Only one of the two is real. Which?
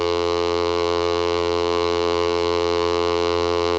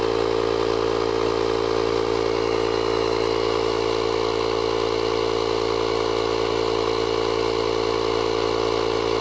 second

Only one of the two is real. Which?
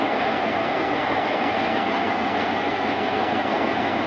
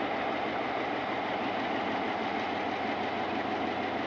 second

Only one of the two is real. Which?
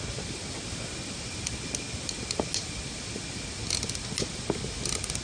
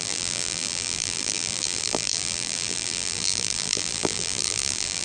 first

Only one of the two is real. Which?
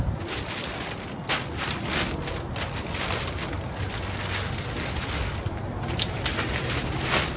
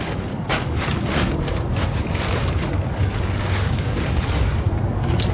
first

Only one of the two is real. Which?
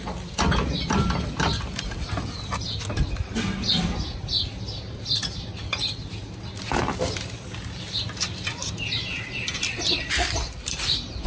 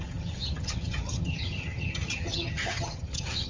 first